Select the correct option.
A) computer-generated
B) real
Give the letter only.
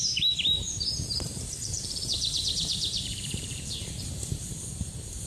A